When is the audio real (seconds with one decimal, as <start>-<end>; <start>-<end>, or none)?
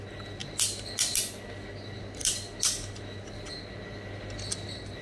0.0-5.0